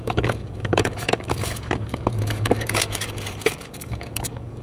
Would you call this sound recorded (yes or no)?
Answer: no